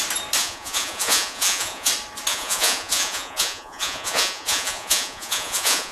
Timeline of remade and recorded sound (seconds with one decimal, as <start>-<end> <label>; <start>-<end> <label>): 0.0-0.4 recorded; 0.4-1.9 remade; 1.9-2.3 recorded; 2.3-5.9 remade